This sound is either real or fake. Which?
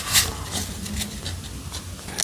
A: real